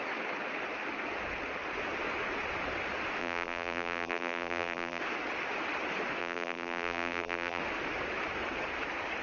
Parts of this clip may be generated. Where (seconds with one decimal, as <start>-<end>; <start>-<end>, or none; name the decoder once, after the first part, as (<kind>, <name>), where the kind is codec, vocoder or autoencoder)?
3.2-5.0 (vocoder, BigVGAN v2); 6.2-7.6

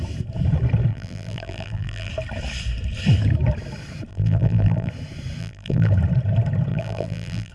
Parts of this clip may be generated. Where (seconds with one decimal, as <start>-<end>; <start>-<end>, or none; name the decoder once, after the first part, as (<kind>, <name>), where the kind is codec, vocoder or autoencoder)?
0.9-2.1 (vocoder, BigVGAN v2); 4.1-4.9; 5.4-5.9; 6.7-7.5

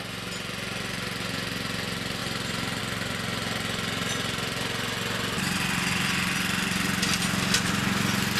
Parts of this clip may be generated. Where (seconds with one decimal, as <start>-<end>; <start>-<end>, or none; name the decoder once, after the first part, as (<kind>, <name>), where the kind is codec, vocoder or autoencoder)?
none

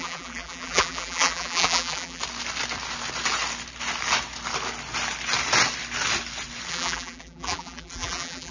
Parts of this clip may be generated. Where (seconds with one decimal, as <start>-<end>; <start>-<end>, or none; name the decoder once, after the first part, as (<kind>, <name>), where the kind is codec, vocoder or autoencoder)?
0.0-2.2 (vocoder, BigVGAN v2); 6.7-8.5

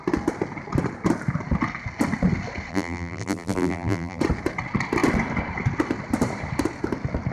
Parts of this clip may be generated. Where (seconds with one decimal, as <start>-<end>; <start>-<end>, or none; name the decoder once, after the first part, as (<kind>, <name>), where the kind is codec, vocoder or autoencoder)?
2.7-4.2 (vocoder, BigVGAN v2)

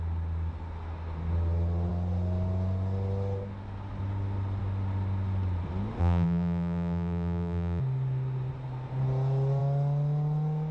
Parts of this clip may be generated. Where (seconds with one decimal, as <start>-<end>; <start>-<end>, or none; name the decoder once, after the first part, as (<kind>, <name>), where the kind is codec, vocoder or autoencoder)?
6.0-7.8 (vocoder, BigVGAN v2)

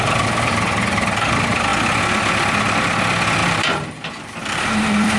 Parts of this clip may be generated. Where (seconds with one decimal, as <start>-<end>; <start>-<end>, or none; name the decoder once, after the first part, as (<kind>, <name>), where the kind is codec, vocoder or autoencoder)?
3.4-3.9 (vocoder, BigVGAN v2); 4.4-5.2

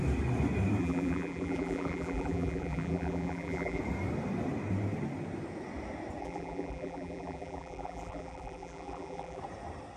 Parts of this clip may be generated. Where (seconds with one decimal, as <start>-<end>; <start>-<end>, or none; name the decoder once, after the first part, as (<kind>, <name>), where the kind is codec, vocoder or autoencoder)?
0.8-3.8 (vocoder, BigVGAN v2); 6.2-9.4